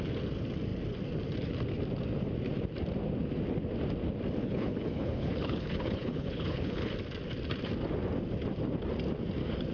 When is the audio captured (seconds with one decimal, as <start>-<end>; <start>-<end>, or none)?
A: 0.0-4.4; 6.9-9.7